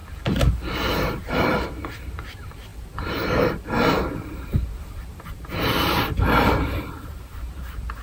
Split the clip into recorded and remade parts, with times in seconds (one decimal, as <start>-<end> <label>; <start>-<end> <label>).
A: 0.0-8.0 remade